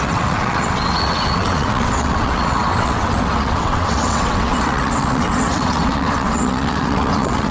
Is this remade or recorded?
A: remade